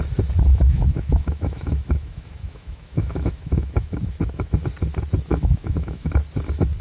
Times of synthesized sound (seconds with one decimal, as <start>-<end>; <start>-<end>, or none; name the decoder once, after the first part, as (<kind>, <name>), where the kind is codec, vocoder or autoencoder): 0.5-4.6 (autoencoder, DAC-VAE); 5.3-6.1